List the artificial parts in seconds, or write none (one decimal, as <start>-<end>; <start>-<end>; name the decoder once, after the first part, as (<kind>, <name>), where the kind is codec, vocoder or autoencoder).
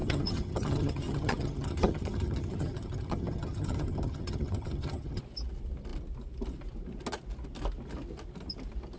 0.0-5.2 (vocoder, HiFi-GAN)